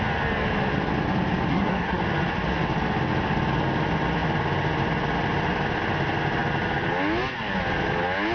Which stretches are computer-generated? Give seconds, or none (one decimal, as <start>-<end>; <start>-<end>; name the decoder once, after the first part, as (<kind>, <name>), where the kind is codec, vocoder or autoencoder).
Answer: 1.5-2.0 (codec, SNAC)